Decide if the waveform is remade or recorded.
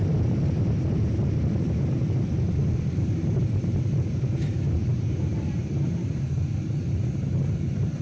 remade